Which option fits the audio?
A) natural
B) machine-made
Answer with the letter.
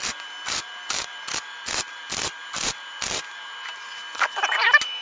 B